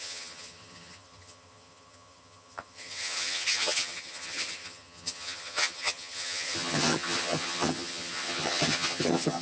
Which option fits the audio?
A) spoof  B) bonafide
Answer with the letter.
A